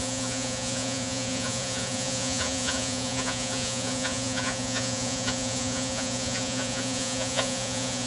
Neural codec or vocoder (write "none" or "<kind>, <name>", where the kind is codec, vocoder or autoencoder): vocoder, Vocos